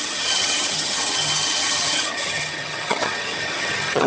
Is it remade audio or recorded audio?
remade